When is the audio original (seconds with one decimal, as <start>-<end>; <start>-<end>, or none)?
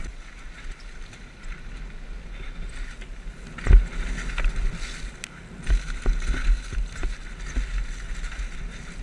0.0-9.0